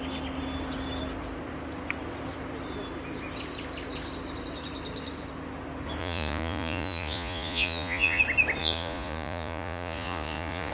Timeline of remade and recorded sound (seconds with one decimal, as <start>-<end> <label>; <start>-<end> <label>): 0.0-6.0 recorded; 6.0-8.2 remade; 8.2-8.6 recorded; 8.6-10.7 remade